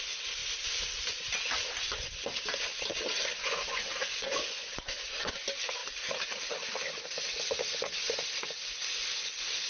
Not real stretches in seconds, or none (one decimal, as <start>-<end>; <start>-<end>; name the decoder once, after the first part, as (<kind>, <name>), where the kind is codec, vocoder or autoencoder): 3.4-5.3 (vocoder, Vocos)